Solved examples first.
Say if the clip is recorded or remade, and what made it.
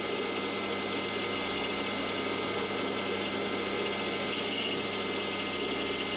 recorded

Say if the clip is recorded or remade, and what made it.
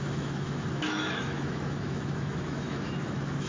remade, autoencoder, DAC-VAE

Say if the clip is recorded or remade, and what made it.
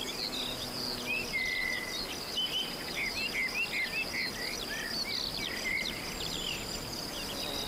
recorded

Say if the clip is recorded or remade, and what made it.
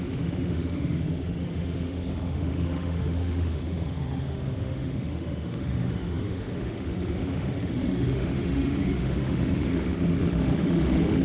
remade, autoencoder, DAC-VAE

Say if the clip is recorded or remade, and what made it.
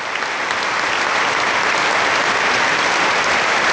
recorded